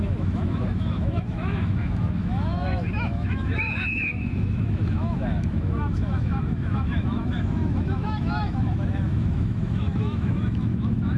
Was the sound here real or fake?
fake